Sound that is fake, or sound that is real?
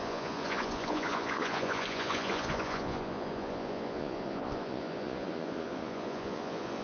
fake